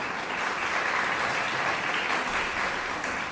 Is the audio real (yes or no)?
yes